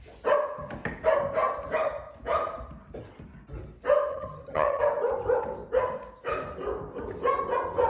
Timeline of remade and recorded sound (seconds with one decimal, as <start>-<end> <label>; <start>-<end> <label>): 0.0-4.1 recorded; 4.1-4.8 remade; 4.8-7.9 recorded